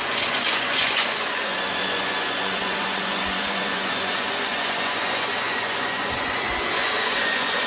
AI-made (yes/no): yes